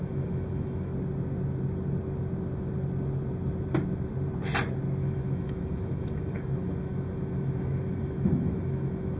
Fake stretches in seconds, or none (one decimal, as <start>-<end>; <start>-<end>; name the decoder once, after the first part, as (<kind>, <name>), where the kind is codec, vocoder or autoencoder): 0.0-0.9 (autoencoder, DAC-VAE); 5.0-9.2